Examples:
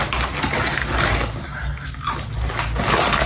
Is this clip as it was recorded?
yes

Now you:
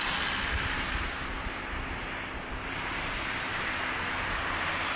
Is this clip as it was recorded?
yes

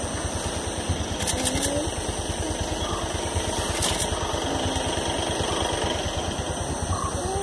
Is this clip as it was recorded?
yes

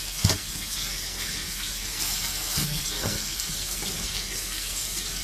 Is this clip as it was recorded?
no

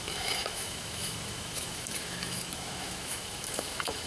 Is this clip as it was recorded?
no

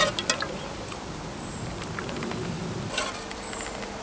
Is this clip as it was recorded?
yes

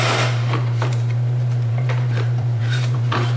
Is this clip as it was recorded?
no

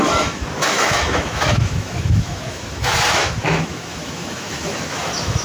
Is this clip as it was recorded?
no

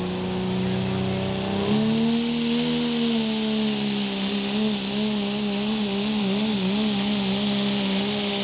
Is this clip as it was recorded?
yes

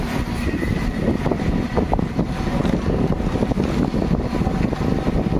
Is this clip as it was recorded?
yes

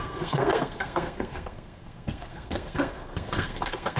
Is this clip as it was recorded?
no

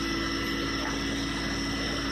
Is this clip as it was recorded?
yes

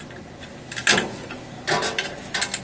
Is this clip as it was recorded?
yes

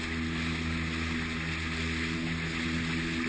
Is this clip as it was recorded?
yes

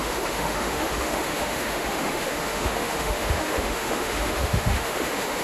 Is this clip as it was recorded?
no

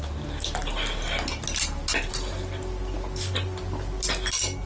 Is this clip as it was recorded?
yes